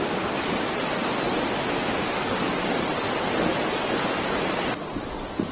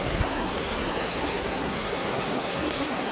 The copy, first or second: second